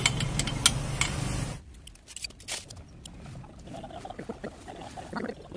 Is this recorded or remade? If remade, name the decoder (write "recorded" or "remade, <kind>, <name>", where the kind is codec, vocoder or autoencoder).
recorded